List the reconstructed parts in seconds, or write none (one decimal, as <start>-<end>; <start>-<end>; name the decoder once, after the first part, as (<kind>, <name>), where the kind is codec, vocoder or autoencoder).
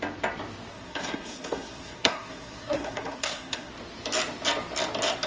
0.7-3.7 (codec, SNAC)